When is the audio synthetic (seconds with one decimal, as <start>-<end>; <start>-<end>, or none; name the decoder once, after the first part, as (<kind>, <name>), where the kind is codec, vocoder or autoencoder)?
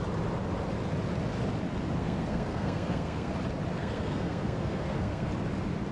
2.0-3.3 (codec, SNAC); 3.7-5.3